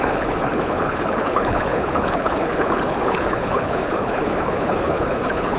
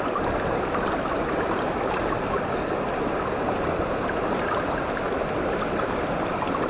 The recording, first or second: second